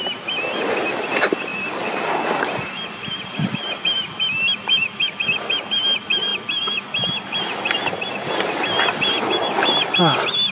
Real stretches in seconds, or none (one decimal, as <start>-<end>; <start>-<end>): 0.0-1.5; 4.1-10.5